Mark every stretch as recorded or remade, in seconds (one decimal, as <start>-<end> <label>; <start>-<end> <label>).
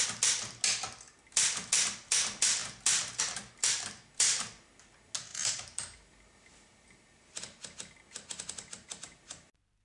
0.0-9.8 recorded